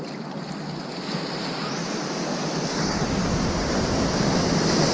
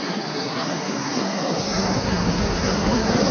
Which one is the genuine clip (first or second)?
first